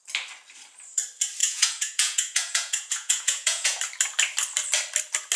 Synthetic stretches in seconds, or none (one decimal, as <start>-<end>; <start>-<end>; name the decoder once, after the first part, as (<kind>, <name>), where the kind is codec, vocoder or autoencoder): 1.4-3.8 (vocoder, Vocos)